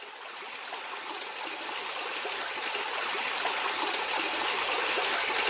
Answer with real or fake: real